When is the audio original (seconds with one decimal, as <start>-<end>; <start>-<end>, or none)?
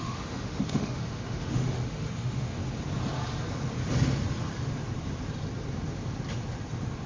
2.6-7.1